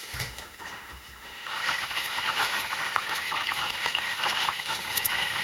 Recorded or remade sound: remade